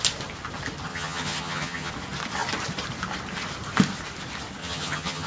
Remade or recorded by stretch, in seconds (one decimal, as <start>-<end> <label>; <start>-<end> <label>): 0.0-0.9 recorded; 0.9-1.9 remade; 1.9-4.6 recorded; 4.6-5.3 remade